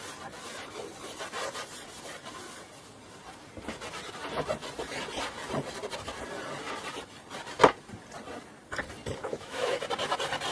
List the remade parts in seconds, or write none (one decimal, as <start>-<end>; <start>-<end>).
9.2-9.8

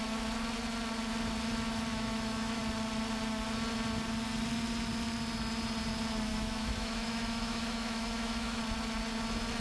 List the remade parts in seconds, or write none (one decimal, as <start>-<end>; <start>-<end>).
1.9-2.6; 6.3-8.6

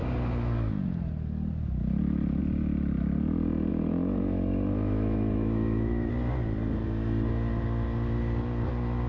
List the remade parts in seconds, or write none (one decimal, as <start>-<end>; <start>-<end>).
3.7-6.1

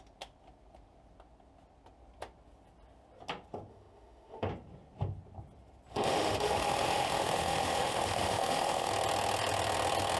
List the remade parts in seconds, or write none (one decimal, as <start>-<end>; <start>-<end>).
3.7-4.5; 5.9-8.9

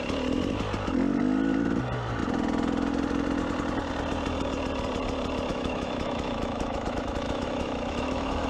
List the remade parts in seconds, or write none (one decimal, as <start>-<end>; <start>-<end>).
5.5-8.5

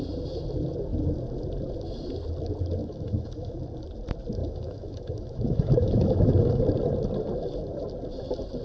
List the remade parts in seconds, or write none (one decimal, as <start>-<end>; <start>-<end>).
2.8-3.6; 4.4-6.6

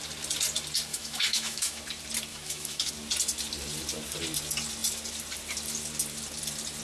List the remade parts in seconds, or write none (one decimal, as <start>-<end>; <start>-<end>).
0.9-1.8; 2.3-2.9

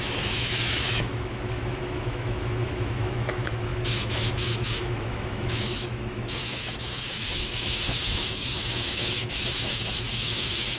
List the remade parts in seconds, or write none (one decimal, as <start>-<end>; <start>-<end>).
0.0-10.8